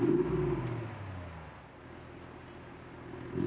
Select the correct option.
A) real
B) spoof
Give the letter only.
A